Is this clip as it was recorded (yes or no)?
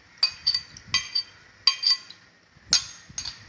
yes